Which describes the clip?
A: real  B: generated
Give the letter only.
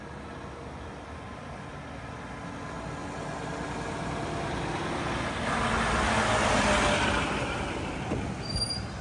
A